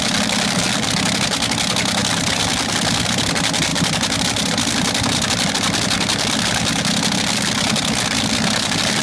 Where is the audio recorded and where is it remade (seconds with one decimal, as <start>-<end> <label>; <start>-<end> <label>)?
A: 0.0-2.0 recorded; 2.0-3.3 remade; 3.3-3.7 recorded; 3.7-5.5 remade; 5.5-9.0 recorded